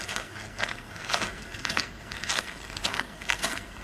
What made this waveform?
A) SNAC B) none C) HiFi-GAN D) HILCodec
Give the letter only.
A